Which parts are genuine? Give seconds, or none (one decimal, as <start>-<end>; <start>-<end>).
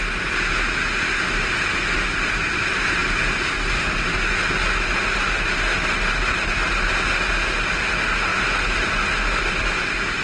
0.0-10.2